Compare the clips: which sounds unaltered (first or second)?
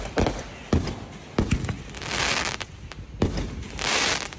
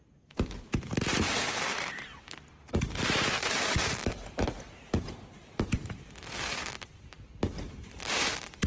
first